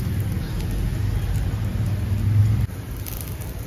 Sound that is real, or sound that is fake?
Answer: real